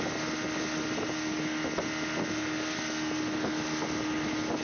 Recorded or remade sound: recorded